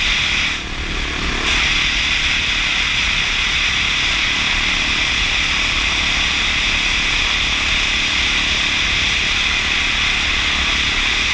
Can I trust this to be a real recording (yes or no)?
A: yes